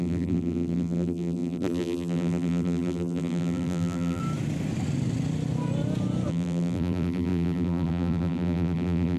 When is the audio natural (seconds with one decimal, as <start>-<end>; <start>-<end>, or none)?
4.2-6.3